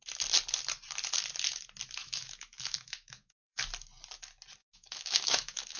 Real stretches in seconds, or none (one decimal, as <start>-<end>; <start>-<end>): 0.0-2.0; 3.6-4.6